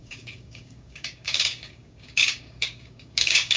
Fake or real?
fake